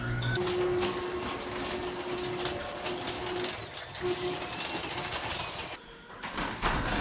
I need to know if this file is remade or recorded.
recorded